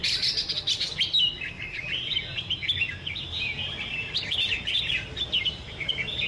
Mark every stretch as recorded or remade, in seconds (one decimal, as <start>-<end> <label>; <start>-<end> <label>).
0.0-1.5 recorded; 1.5-6.3 remade